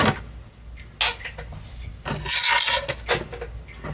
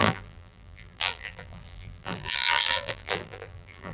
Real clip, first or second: first